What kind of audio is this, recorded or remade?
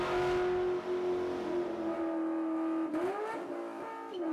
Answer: recorded